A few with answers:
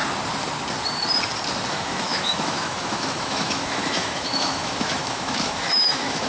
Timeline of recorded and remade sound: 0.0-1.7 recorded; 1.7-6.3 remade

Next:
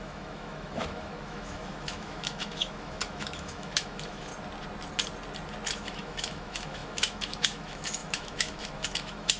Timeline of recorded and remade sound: 0.0-4.3 remade; 4.3-5.7 recorded; 5.7-9.4 remade

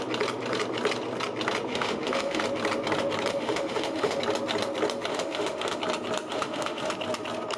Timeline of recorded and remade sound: 0.0-1.7 recorded; 1.7-2.4 remade; 2.4-3.3 recorded; 3.3-4.2 remade; 4.2-5.1 recorded; 5.1-5.8 remade; 5.8-6.3 recorded; 6.3-6.9 remade; 6.9-7.6 recorded